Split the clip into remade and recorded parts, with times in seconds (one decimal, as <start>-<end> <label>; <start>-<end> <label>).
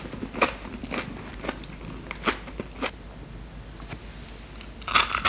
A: 0.0-5.3 recorded